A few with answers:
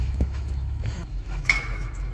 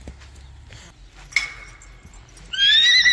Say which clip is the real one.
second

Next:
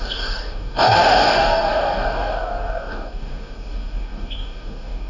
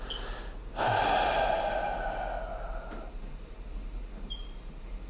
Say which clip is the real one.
second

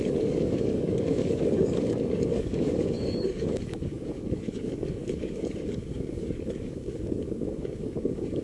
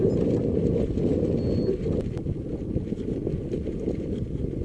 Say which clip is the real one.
second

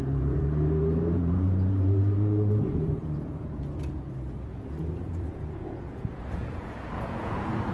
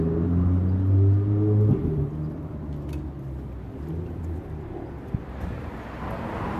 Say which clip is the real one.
second